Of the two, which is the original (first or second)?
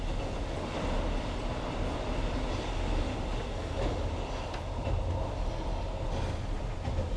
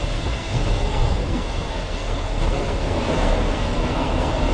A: first